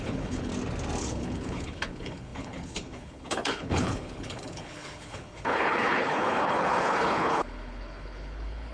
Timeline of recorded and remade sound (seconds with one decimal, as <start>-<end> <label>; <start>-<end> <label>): 0.0-0.5 remade; 0.5-1.0 recorded; 1.0-8.7 remade